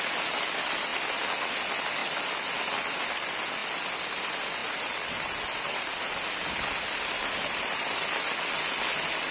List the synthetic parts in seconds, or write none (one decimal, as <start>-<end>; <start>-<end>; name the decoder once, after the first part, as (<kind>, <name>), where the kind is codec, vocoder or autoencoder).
none